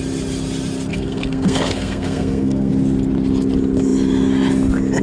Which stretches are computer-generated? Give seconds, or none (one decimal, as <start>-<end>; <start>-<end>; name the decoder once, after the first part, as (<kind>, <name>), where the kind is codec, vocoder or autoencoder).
0.9-2.7 (codec, SNAC)